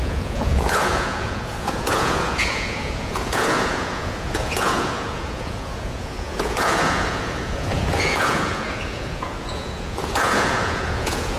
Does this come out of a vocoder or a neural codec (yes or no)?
yes